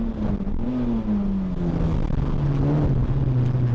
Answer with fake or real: real